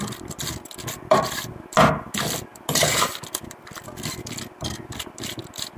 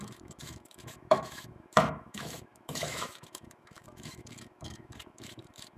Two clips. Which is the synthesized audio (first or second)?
second